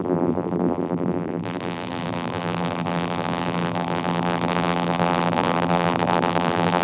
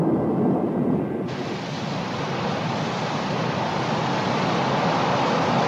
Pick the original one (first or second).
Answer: second